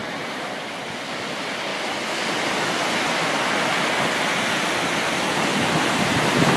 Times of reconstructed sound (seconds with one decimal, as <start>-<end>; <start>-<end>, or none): 0.0-0.7; 5.5-6.1